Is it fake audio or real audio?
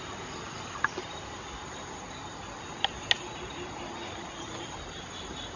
real